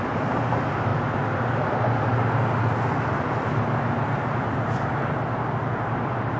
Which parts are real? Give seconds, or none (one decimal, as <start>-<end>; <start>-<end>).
0.0-6.4